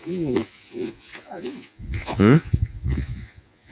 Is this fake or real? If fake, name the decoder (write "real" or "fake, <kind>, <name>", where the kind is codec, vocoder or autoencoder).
fake, vocoder, Vocos